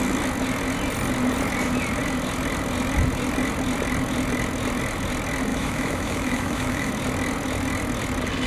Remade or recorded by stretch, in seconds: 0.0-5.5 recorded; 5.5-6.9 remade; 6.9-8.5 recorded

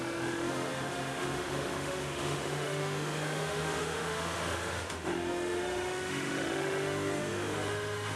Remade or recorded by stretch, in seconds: 0.0-8.2 remade

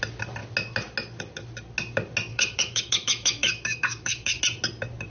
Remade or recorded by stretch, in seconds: 0.0-2.3 recorded; 2.3-4.4 remade; 4.4-5.1 recorded

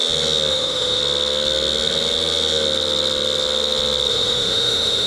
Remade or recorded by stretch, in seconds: 0.0-0.5 recorded; 0.5-1.0 remade; 1.0-4.1 recorded; 4.1-5.1 remade

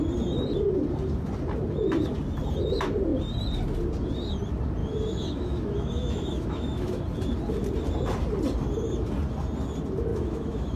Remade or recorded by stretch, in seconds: 0.0-4.8 recorded; 4.8-7.0 remade; 7.0-10.1 recorded; 10.1-10.8 remade

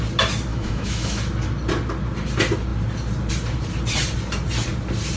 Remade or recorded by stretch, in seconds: 0.0-0.5 recorded; 0.5-1.2 remade; 1.2-5.2 recorded

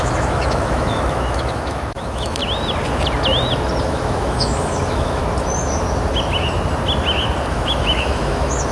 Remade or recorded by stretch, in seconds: 0.0-2.4 remade; 2.4-3.8 recorded; 3.8-5.2 remade; 5.2-7.5 recorded; 7.5-8.7 remade